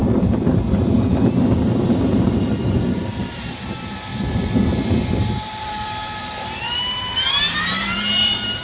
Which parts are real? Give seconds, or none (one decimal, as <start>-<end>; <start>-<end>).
0.0-2.9; 4.1-5.4